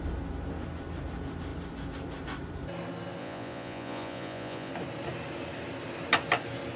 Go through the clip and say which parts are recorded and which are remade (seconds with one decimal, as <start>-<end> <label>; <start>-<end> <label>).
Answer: 0.0-3.2 recorded; 3.2-4.7 remade; 4.7-6.8 recorded